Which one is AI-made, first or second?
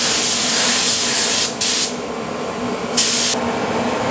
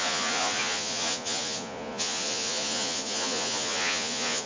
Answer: second